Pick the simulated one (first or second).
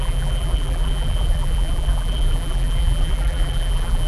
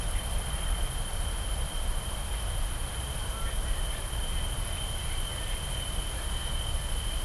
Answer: first